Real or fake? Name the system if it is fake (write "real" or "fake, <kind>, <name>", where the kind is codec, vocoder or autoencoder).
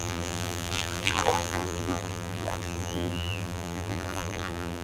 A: fake, vocoder, BigVGAN v2